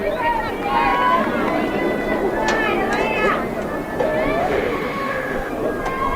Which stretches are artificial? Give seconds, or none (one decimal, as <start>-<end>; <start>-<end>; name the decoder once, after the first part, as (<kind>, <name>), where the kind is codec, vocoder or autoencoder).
4.4-5.5 (autoencoder, DAC-VAE)